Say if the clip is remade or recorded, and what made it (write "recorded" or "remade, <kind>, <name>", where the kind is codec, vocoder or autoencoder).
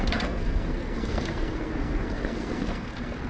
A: remade, codec, SNAC